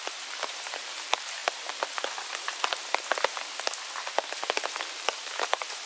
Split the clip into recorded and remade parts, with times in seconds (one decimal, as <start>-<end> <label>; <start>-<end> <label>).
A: 0.0-1.4 remade; 1.4-4.9 recorded; 4.9-5.9 remade